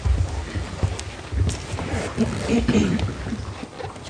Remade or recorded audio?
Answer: recorded